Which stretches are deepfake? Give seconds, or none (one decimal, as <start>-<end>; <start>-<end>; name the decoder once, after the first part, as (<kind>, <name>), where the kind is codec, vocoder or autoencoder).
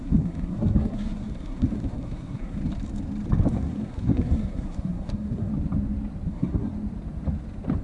0.0-2.6 (codec, SNAC); 3.5-5.5; 6.3-6.7